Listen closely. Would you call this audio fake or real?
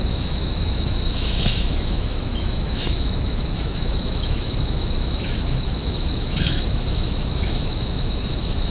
fake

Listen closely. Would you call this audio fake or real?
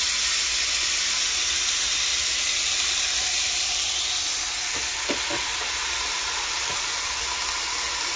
real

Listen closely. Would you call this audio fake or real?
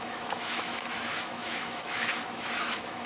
fake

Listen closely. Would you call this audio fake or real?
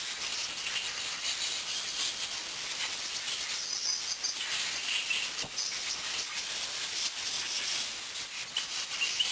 real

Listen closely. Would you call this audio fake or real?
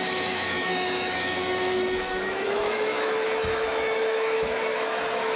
fake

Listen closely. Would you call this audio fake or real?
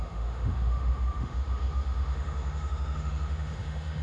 fake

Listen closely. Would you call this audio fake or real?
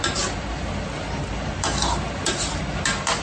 real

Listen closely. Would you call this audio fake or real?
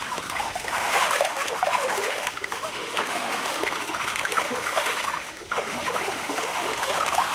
fake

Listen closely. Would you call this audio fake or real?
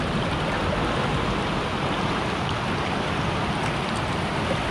real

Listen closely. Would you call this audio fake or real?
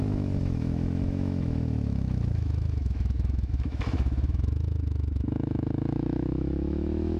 fake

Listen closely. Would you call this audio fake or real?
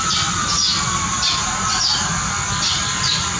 real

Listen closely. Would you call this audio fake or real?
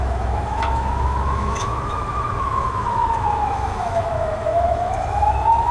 fake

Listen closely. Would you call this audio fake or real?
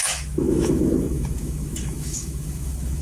fake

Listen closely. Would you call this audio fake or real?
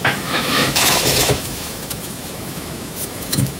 fake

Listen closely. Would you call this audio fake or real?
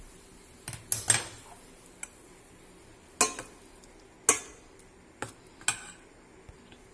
real